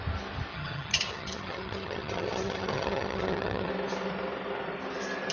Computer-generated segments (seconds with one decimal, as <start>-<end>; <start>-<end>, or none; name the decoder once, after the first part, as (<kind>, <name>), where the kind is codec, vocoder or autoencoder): 0.5-3.7 (vocoder, HiFi-GAN)